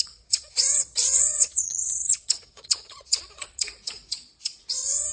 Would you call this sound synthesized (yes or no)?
yes